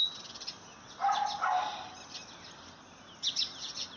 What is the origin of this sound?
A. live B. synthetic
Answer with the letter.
A